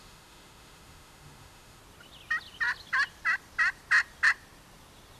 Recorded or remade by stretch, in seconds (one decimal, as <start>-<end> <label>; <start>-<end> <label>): 0.0-1.8 remade; 1.8-5.2 recorded